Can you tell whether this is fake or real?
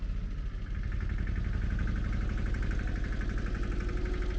real